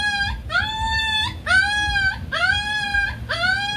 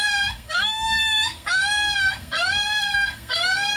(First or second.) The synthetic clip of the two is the second